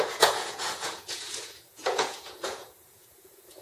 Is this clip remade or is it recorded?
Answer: remade